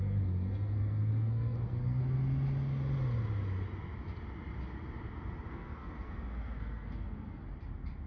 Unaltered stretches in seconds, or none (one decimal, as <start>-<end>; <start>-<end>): 2.0-5.5; 7.4-8.1